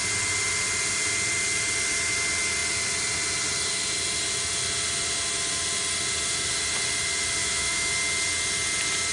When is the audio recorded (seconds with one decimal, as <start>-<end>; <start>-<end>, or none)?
0.0-7.4; 7.9-9.1